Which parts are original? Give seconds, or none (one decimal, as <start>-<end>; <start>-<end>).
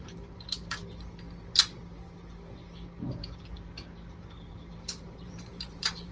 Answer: 0.8-4.5